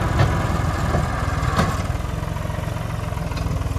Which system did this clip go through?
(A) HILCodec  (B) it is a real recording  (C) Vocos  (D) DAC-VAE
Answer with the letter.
B